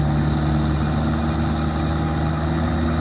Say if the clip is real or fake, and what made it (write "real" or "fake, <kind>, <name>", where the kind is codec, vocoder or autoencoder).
real